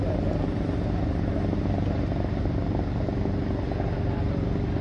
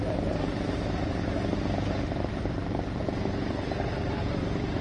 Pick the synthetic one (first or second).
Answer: second